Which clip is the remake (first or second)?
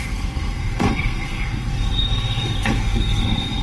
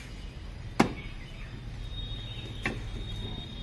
first